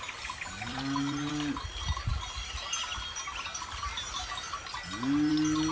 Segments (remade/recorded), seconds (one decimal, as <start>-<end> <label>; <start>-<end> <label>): 0.0-0.7 recorded; 0.7-1.3 remade; 1.3-5.7 recorded